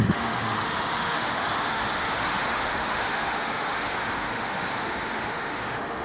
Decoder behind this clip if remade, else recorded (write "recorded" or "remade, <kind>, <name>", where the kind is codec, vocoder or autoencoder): remade, autoencoder, DAC-VAE